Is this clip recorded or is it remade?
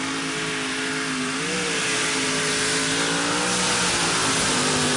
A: recorded